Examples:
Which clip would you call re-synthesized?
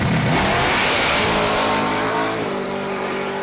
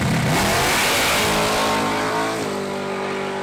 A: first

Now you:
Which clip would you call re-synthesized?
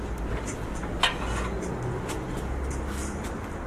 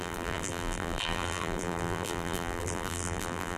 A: second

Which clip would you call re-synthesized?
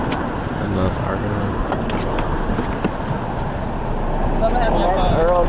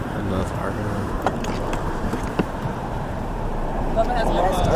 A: second